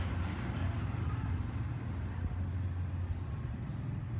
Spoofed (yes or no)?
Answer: no